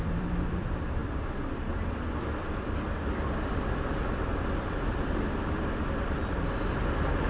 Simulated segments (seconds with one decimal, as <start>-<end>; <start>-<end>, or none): 0.0-7.3